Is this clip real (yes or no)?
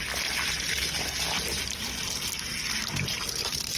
yes